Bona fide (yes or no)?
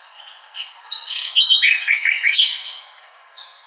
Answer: no